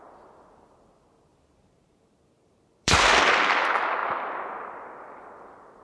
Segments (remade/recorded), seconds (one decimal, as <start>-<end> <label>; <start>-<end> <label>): 0.0-1.3 recorded; 1.3-3.5 remade; 3.5-5.8 recorded